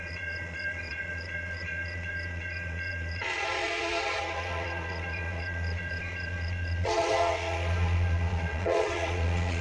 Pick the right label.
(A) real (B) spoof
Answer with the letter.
B